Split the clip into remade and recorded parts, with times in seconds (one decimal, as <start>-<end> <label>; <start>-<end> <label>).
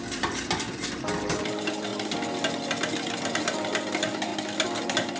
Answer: 0.0-1.9 remade; 1.9-3.3 recorded; 3.3-4.3 remade; 4.3-4.8 recorded; 4.8-5.2 remade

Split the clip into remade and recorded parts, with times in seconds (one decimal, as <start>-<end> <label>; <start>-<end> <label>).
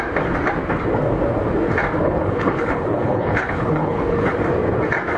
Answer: 0.0-2.0 recorded; 2.0-4.3 remade; 4.3-5.2 recorded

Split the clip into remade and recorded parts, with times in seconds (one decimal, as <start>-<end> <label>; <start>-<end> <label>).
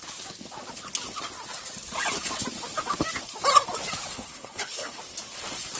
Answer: 0.0-4.1 recorded; 4.1-5.0 remade; 5.0-5.8 recorded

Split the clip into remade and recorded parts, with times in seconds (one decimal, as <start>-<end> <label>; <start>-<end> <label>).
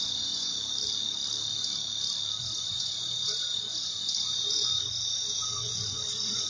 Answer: 0.0-0.5 remade; 0.5-2.4 recorded; 2.4-6.5 remade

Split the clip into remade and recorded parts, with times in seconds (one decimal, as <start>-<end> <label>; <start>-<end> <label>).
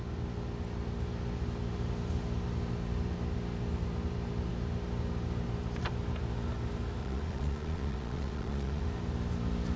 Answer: 0.0-7.0 recorded; 7.0-8.8 remade; 8.8-9.8 recorded